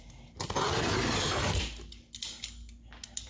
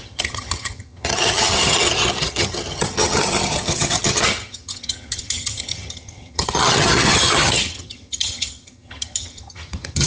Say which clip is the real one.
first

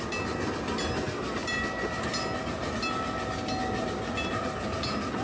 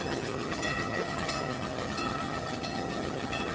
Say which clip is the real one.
first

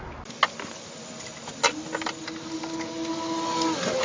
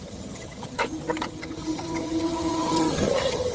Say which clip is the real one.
first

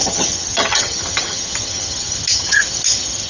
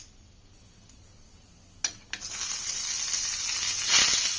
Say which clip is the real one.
second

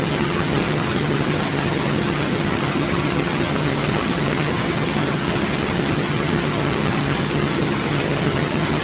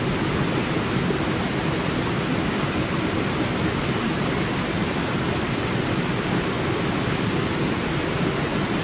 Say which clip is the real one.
second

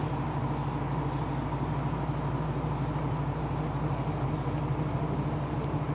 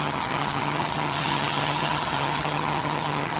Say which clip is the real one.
first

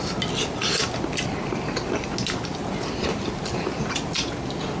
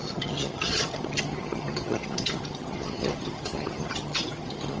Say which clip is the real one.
first